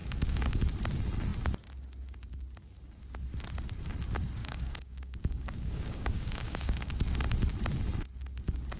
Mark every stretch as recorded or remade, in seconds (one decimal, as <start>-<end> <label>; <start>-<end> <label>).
0.0-0.6 remade; 0.6-4.4 recorded; 4.4-6.9 remade; 6.9-8.8 recorded